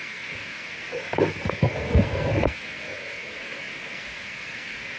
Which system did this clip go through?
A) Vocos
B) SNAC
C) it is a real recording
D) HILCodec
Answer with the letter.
B